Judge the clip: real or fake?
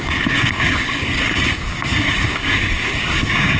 fake